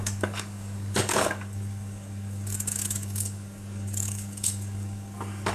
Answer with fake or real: fake